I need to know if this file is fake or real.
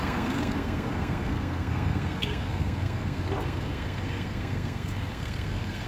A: fake